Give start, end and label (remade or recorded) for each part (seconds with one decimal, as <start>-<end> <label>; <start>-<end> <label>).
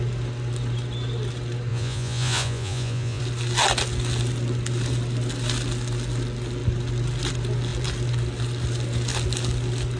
0.0-1.7 recorded; 1.7-3.2 remade; 3.2-10.0 recorded